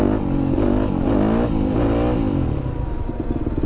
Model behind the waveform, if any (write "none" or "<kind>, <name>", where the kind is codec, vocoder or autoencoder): none